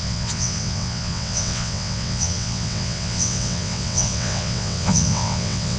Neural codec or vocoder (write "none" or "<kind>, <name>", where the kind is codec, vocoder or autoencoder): vocoder, WaveNeXt